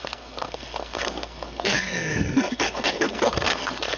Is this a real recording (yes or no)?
no